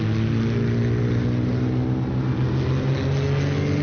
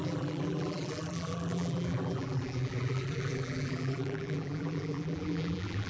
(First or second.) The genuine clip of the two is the first